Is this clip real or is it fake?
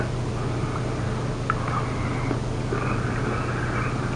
real